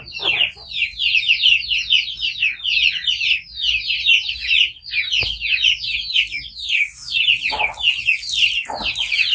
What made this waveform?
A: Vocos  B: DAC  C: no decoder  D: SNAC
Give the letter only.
C